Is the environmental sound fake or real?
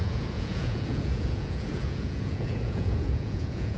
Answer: fake